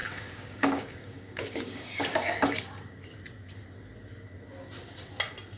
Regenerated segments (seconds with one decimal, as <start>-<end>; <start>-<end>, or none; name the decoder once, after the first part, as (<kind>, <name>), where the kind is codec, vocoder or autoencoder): 0.0-3.0 (codec, DAC)